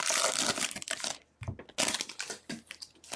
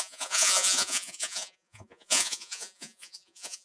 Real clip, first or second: first